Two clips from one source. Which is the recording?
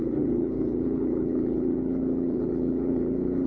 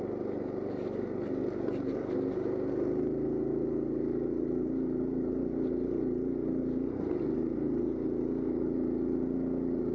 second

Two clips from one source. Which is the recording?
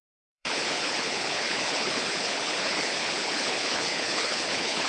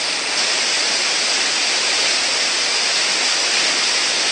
second